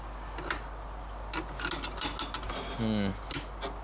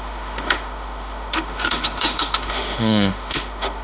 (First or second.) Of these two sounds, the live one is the first